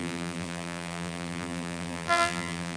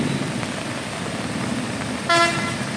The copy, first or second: first